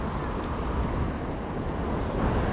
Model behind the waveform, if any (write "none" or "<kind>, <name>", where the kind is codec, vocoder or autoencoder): none